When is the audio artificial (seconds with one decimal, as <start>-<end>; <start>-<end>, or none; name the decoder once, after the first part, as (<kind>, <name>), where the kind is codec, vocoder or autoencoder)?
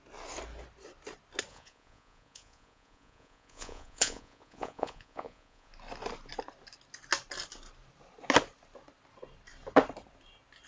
1.5-5.7 (vocoder, Vocos)